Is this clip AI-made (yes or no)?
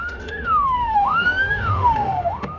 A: yes